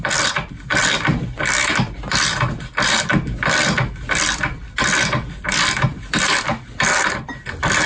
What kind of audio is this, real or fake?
real